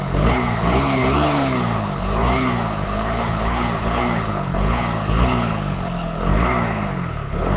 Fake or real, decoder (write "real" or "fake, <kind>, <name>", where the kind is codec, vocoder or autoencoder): fake, codec, HILCodec